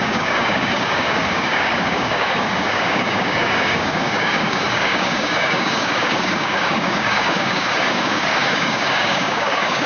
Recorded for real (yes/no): no